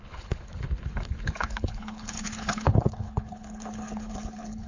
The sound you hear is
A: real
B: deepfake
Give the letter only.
B